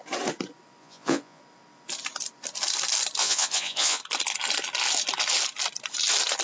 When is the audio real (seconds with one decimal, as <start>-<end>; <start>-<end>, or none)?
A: 0.0-0.8; 1.4-3.2; 4.0-6.4